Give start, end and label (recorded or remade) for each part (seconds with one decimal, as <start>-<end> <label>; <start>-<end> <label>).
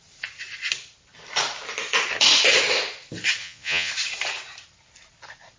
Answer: 0.0-3.4 recorded; 3.4-3.9 remade; 3.9-5.6 recorded